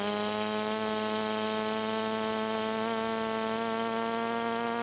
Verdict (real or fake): real